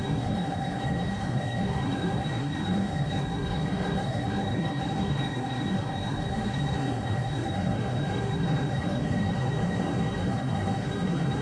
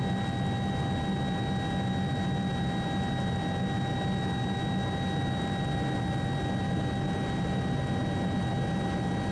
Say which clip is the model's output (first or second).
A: first